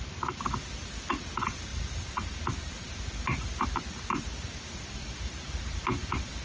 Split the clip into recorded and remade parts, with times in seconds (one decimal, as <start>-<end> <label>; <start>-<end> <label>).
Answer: 0.0-1.7 recorded; 1.7-2.8 remade; 2.8-5.0 recorded; 5.0-6.4 remade

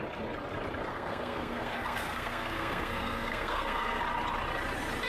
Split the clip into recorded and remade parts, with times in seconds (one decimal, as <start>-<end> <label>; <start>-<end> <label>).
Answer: 0.0-0.9 recorded; 0.9-4.0 remade; 4.0-5.1 recorded

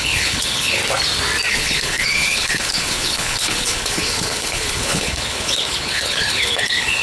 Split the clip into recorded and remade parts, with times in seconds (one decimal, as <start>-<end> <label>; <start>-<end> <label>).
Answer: 0.0-0.8 remade; 0.8-1.5 recorded; 1.5-7.0 remade

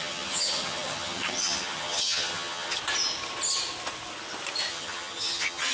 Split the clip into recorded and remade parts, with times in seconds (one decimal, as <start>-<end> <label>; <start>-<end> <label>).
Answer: 0.0-2.8 remade; 2.8-4.7 recorded; 4.7-5.7 remade

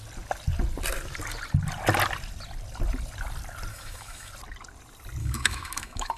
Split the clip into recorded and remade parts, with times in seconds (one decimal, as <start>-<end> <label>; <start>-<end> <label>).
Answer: 0.0-3.7 recorded; 3.7-4.3 remade; 4.3-5.2 recorded; 5.2-6.2 remade

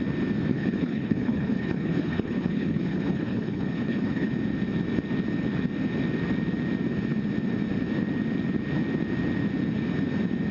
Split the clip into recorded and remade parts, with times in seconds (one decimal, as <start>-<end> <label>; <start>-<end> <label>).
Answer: 0.0-0.5 recorded; 0.5-4.3 remade; 4.3-10.5 recorded

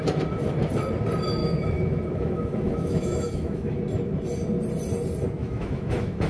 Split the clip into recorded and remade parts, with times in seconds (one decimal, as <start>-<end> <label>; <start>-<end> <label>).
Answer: 0.0-1.4 recorded; 1.4-3.8 remade; 3.8-5.4 recorded; 5.4-6.3 remade